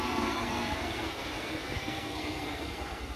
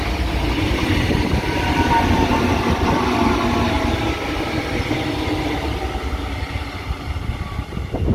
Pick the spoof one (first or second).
first